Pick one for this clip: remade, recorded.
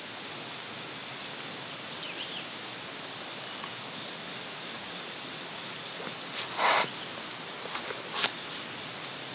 recorded